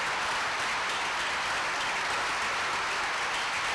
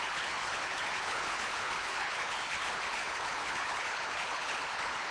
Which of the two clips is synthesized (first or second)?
second